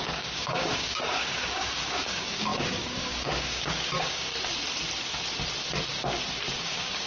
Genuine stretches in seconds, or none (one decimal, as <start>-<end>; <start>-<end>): 4.3-6.6